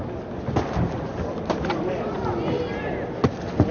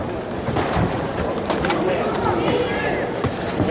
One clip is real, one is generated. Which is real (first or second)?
first